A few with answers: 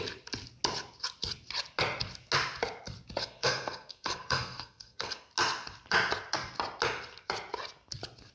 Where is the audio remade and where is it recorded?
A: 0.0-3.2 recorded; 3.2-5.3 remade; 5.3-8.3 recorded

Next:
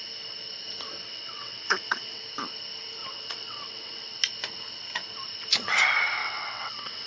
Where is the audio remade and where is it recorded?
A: 0.0-1.1 recorded; 1.1-2.2 remade; 2.2-3.0 recorded; 3.0-4.2 remade; 4.2-6.2 recorded; 6.2-7.1 remade

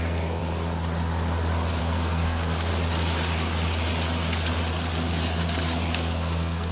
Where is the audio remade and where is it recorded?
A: 0.0-0.4 remade; 0.4-1.8 recorded; 1.8-2.7 remade; 2.7-5.9 recorded; 5.9-6.7 remade